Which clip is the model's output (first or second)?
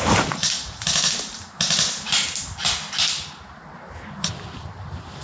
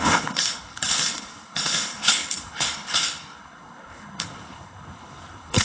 second